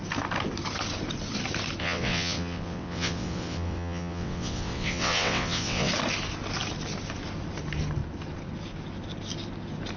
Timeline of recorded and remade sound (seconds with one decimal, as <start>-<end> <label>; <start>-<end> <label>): 0.0-1.8 recorded; 1.8-5.9 remade; 5.9-10.0 recorded